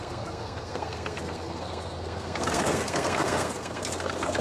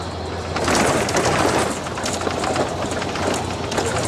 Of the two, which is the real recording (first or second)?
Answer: second